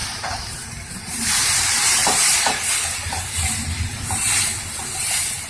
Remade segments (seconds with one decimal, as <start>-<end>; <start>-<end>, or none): 0.0-2.0

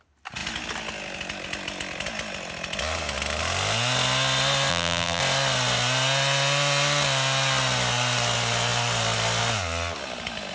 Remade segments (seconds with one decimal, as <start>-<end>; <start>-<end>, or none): 4.7-5.2

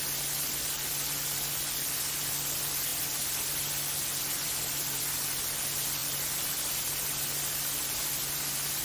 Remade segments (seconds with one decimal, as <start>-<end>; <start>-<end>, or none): none

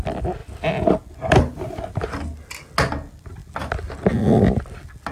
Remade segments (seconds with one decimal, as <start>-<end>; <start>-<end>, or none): 0.4-1.1